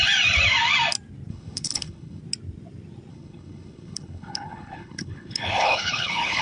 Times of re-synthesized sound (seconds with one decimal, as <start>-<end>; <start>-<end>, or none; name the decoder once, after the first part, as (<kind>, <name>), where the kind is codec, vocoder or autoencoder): 1.3-2.2 (codec, HILCodec); 3.1-6.4

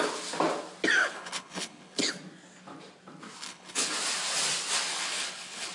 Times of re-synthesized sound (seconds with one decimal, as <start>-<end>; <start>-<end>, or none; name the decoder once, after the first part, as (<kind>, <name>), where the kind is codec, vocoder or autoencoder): 1.0-2.1 (codec, HILCodec); 3.4-3.9; 4.9-5.7

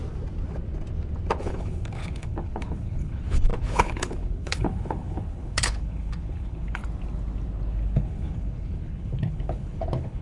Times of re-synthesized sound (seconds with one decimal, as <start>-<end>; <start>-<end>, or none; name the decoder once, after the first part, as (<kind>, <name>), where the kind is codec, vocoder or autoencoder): 1.4-6.8 (codec, HILCodec); 7.7-10.2

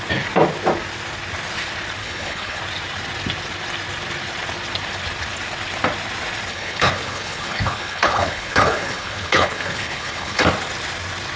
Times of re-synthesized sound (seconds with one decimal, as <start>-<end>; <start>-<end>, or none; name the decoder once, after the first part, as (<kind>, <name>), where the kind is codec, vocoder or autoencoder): 2.0-2.6 (codec, HILCodec); 6.5-10.4

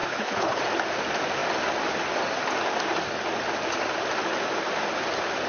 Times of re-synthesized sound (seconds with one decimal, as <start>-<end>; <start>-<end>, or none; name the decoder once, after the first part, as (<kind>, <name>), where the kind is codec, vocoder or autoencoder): 0.0-0.6 (codec, HILCodec)

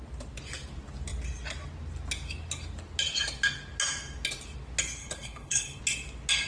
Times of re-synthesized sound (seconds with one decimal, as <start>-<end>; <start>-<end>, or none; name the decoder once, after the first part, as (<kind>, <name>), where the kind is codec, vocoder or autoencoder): 5.0-5.8 (codec, HILCodec)

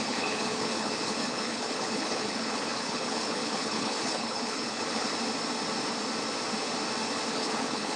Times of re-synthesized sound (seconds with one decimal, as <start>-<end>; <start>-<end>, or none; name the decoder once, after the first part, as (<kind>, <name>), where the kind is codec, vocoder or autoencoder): 0.0-5.1 (codec, HILCodec); 7.3-8.0